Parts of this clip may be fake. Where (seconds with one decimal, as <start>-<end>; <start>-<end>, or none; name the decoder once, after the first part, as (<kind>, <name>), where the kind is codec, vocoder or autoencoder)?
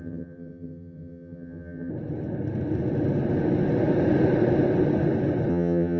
0.0-1.9 (vocoder, HiFi-GAN); 5.5-6.0